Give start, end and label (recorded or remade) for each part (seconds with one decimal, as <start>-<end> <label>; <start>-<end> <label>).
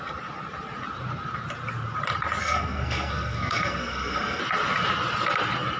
0.0-2.4 recorded; 2.4-4.4 remade; 4.4-5.8 recorded